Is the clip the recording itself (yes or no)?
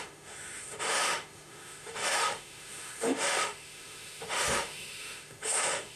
no